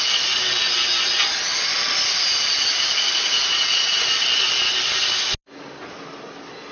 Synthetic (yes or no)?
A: no